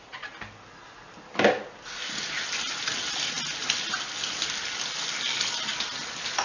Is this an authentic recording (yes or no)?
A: yes